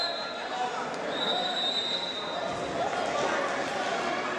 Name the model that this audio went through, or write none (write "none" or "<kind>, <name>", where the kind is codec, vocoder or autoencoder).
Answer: none